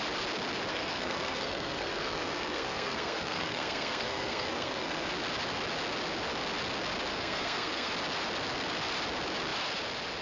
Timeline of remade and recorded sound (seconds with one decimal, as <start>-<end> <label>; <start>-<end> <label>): 0.0-0.7 recorded; 0.7-5.1 remade; 5.1-7.1 recorded; 7.1-7.9 remade; 7.9-10.2 recorded